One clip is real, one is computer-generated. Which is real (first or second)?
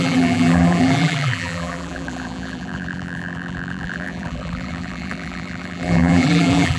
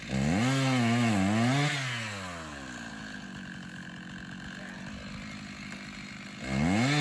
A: second